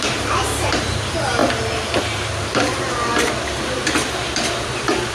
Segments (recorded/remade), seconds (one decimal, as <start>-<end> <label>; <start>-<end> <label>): 0.0-1.4 remade; 1.4-2.0 recorded; 2.0-3.1 remade; 3.1-3.6 recorded; 3.6-5.1 remade